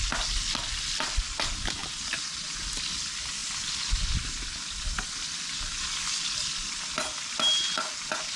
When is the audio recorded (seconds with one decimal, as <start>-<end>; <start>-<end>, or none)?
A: 0.0-8.4